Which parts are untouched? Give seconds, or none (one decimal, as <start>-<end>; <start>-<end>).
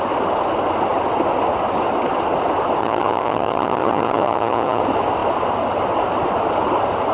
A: 0.0-2.8; 4.8-7.1